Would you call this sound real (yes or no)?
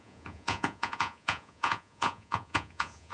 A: no